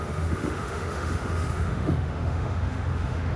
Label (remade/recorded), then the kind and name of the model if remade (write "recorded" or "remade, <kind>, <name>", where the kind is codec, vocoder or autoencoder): remade, autoencoder, DAC-VAE